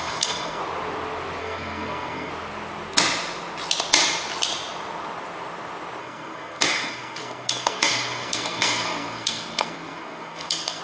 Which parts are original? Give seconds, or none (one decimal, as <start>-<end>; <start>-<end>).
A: 0.6-1.4; 2.3-6.0